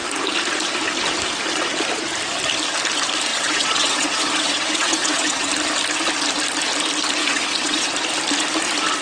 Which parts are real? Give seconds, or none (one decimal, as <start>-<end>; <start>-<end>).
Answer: 0.0-3.3; 5.5-7.2; 7.9-9.0